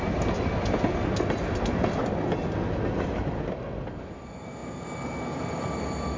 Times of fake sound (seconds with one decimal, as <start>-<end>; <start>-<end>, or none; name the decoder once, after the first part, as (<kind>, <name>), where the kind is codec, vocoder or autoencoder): none

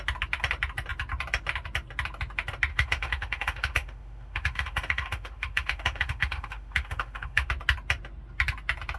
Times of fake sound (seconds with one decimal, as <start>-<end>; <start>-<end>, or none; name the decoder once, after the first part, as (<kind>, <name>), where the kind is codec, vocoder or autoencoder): 2.7-7.5 (autoencoder, DAC-VAE)

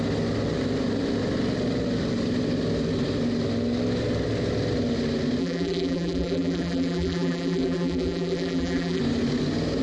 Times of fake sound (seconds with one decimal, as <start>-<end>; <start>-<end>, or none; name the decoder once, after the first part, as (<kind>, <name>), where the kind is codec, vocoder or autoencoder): 5.4-9.0 (vocoder, BigVGAN v2)

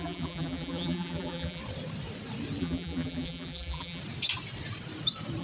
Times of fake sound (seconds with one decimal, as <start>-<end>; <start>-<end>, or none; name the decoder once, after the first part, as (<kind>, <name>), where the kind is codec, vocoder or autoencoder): 0.0-1.6 (vocoder, BigVGAN v2); 2.6-4.0

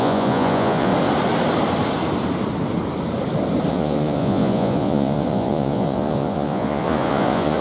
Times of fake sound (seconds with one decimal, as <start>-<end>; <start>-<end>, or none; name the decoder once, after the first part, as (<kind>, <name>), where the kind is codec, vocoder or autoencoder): 0.0-0.9 (vocoder, Vocos); 3.7-7.6

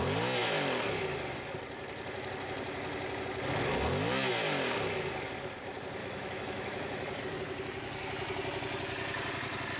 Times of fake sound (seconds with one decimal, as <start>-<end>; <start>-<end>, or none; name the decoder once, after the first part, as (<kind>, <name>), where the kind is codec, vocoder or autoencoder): 6.0-7.2 (autoencoder, DAC-VAE)